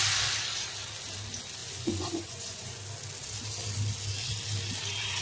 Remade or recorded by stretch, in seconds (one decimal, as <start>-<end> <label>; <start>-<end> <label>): 0.0-1.6 recorded; 1.6-2.8 remade; 2.8-5.2 recorded